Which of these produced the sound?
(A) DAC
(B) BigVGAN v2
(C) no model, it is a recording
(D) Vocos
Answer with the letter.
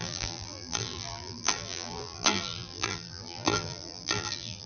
B